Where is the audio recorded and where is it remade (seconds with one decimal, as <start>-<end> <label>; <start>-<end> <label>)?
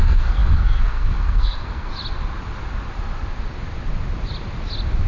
0.0-1.9 remade; 1.9-5.1 recorded